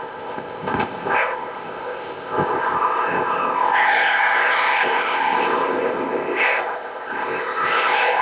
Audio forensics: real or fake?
fake